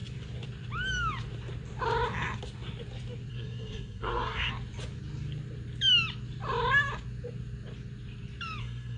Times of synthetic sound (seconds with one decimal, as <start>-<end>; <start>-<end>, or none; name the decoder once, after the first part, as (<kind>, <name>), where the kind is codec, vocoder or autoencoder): 3.3-4.5 (codec, SNAC); 8.6-9.0